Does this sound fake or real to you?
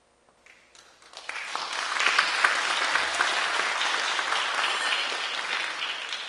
real